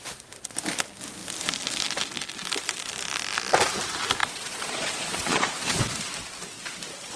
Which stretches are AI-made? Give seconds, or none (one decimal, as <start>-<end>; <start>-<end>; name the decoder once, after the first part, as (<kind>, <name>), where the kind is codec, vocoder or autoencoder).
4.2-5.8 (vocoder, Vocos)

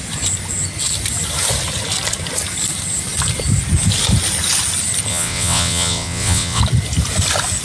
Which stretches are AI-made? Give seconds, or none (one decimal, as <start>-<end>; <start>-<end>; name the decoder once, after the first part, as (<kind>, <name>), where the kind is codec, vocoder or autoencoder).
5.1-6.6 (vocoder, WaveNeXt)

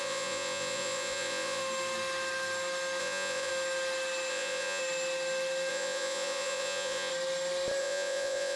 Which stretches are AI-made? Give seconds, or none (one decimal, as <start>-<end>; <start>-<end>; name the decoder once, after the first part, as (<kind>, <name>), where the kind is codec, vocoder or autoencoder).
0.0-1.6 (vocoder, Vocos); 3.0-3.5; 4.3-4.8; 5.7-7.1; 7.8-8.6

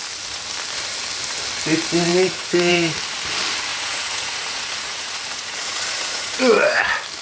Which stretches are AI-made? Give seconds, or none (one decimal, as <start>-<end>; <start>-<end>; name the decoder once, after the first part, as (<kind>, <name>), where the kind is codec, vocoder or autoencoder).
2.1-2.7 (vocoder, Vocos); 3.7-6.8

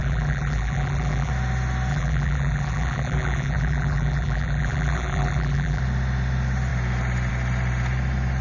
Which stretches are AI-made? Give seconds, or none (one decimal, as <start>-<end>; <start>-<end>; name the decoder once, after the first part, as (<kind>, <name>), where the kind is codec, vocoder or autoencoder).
0.0-1.3 (vocoder, BigVGAN v2); 1.9-5.8